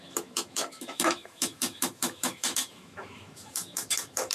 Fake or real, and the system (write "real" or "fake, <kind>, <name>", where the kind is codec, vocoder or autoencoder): fake, autoencoder, DAC-VAE